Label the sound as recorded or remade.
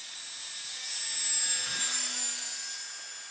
recorded